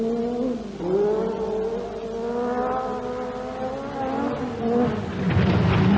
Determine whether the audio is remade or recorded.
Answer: recorded